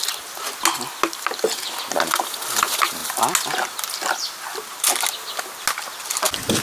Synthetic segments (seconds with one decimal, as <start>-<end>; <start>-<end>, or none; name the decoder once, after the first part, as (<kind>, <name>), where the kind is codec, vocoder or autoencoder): none